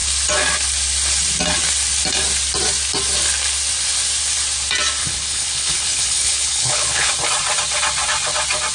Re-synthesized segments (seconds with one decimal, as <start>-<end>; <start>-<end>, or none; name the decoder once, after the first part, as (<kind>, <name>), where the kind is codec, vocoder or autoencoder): 5.0-7.1 (codec, HILCodec)